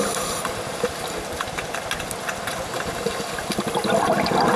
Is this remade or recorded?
recorded